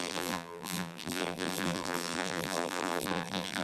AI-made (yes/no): yes